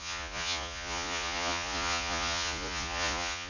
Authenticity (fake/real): fake